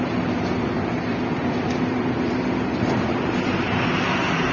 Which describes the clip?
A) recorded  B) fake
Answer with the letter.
A